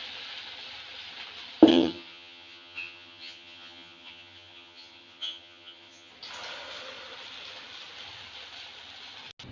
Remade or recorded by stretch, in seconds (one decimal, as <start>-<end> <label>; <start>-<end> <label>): 0.0-1.7 recorded; 1.7-6.1 remade; 6.1-9.5 recorded